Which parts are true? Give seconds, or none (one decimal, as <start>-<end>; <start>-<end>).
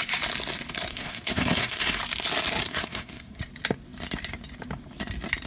0.0-0.9; 2.0-2.7; 3.4-5.5